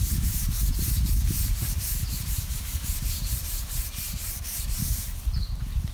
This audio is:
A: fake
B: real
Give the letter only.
A